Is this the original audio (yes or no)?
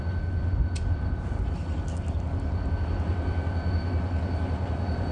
yes